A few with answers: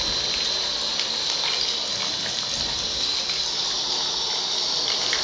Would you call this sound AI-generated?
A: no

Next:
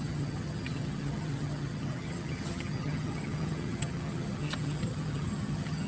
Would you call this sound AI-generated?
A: yes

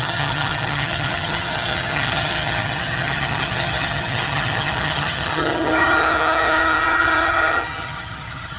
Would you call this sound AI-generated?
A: yes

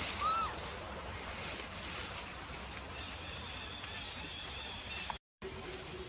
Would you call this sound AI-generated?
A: no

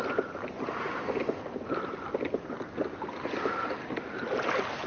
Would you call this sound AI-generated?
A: no